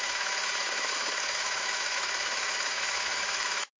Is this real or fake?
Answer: fake